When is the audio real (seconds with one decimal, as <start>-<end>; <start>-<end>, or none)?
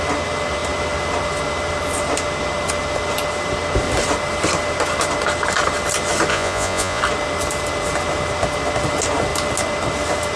0.0-6.3; 7.0-10.4